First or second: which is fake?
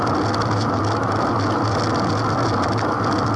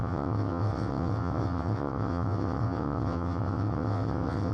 second